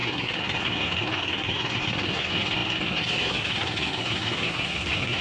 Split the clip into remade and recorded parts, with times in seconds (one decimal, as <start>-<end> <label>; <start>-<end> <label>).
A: 0.0-5.2 remade